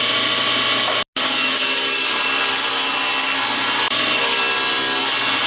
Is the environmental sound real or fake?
real